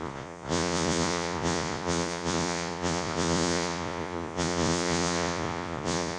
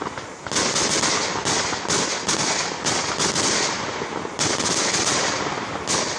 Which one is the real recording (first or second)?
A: second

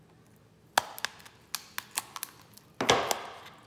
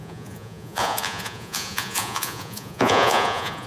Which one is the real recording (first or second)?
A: first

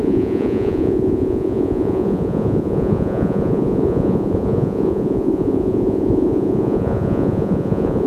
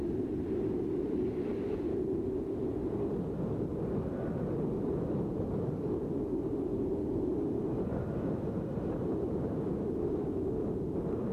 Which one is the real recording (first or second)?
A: second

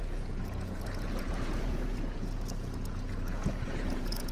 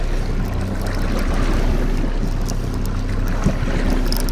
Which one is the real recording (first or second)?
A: second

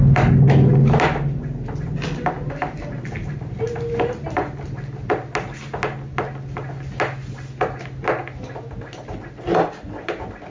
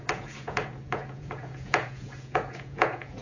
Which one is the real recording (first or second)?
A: first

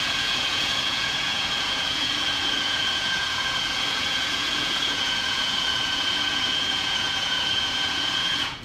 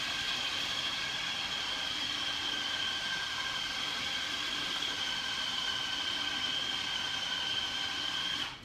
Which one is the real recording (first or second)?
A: second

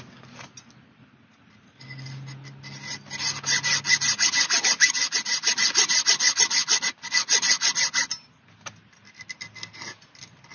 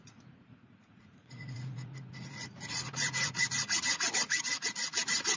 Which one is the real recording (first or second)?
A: first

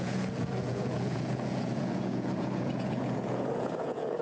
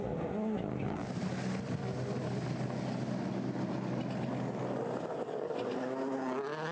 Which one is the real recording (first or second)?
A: second